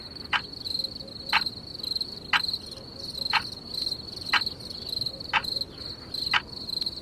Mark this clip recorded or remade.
recorded